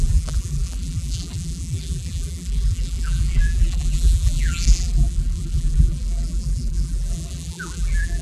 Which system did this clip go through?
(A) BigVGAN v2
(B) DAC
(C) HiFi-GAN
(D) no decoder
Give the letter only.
A